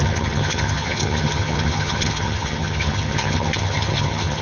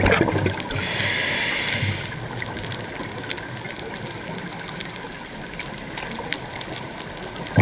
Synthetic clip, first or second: first